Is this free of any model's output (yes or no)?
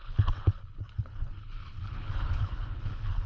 no